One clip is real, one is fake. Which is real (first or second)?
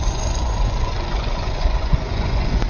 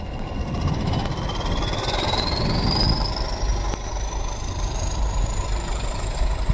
second